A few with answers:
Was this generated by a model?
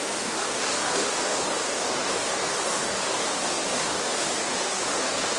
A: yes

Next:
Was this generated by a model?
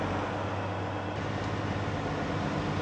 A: no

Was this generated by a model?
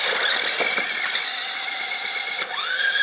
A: no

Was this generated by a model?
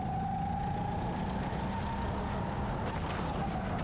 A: no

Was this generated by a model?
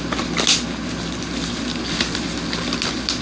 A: no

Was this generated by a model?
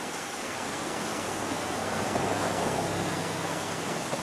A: yes